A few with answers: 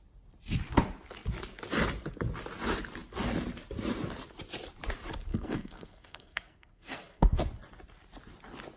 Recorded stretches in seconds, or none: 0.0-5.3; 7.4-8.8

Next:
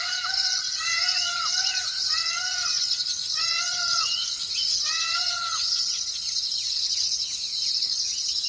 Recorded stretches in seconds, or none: none

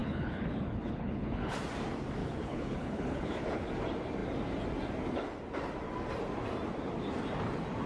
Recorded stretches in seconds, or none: 1.6-2.2; 3.7-7.9

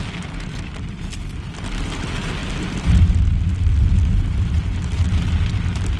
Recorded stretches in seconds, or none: 0.0-6.0

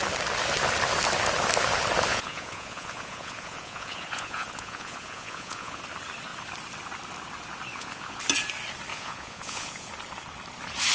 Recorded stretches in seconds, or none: 0.0-2.1; 5.8-7.7; 8.2-8.9; 9.9-10.9

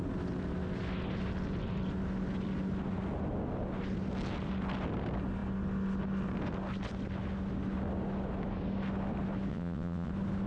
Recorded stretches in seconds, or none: 0.0-9.5; 10.1-10.5

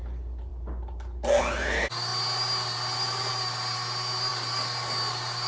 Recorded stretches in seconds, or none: 0.0-5.5